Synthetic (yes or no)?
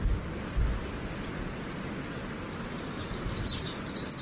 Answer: no